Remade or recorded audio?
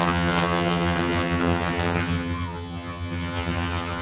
remade